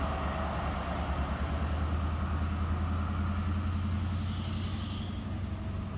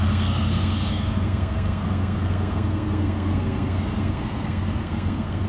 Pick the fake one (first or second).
second